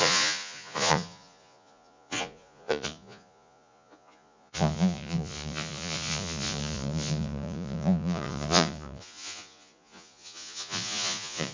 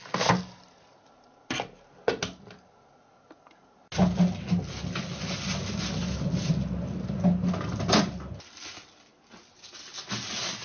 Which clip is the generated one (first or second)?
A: first